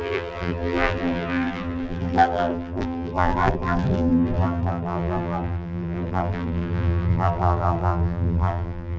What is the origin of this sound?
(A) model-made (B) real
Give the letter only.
A